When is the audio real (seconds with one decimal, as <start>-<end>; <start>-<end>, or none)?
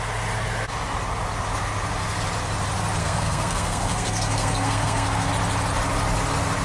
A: 0.0-3.0; 5.3-6.6